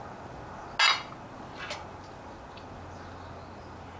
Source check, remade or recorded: recorded